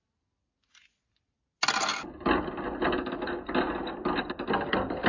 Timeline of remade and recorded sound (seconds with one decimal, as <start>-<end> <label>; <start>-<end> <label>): 0.0-5.1 recorded